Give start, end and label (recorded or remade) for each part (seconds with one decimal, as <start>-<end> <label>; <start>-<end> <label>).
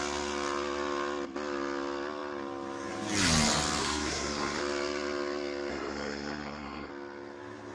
0.0-3.8 recorded; 3.8-4.6 remade; 4.6-5.7 recorded; 5.7-6.9 remade; 6.9-7.7 recorded